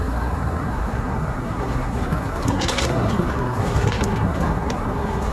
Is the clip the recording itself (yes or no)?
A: no